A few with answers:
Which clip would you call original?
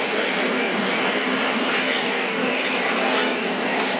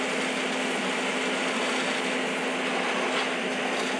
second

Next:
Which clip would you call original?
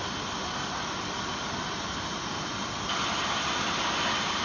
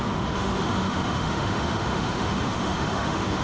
first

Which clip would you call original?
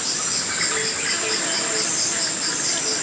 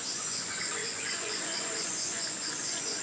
first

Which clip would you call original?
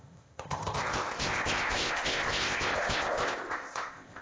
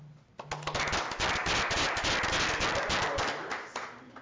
second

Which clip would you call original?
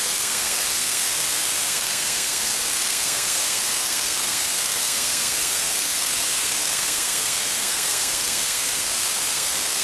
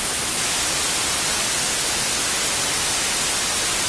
second